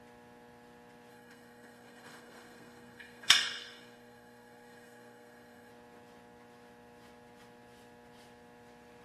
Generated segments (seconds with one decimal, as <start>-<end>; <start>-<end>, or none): 1.1-5.7